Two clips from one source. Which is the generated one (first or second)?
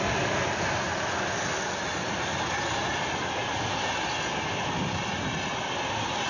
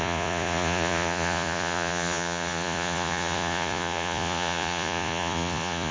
second